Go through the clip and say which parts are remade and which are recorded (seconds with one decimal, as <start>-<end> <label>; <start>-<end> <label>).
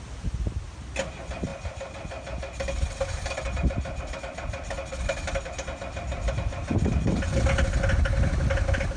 0.0-9.0 recorded